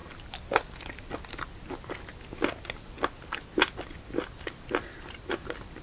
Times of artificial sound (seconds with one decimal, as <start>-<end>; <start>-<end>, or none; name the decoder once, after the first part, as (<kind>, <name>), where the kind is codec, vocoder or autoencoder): none